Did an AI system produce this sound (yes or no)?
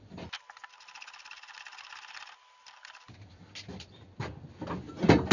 no